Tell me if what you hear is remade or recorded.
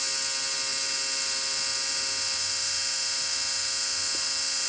recorded